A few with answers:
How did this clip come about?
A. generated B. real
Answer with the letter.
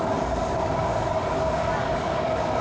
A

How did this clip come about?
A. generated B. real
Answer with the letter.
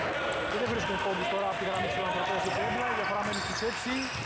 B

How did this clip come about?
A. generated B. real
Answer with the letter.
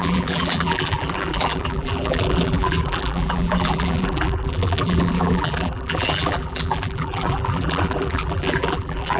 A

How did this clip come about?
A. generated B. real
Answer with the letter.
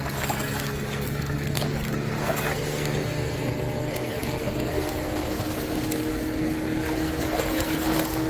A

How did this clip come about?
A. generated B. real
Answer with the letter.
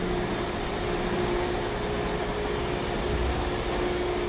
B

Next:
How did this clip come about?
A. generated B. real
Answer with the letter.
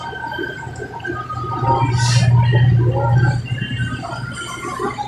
B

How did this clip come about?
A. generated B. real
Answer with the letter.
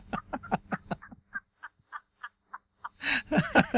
B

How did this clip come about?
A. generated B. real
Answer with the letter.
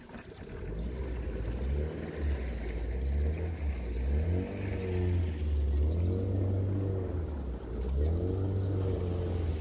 B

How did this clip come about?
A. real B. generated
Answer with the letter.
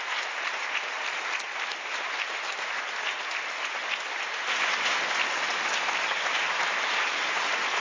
A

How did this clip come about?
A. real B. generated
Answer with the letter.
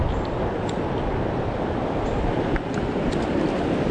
A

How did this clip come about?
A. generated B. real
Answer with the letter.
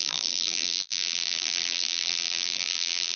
A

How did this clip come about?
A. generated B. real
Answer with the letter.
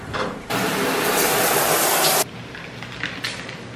B